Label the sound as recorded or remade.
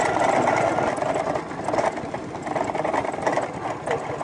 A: recorded